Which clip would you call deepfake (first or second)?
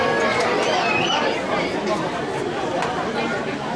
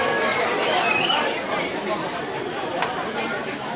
second